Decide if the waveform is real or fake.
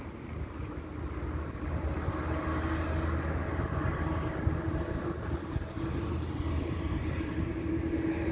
real